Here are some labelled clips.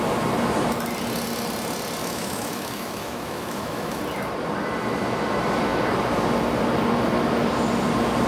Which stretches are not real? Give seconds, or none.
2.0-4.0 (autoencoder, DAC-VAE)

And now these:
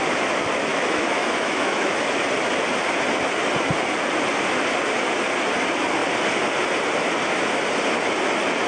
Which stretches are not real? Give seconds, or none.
0.7-2.0 (autoencoder, DAC-VAE)

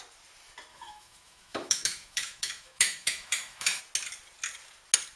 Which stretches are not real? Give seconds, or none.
0.7-3.8 (autoencoder, DAC-VAE)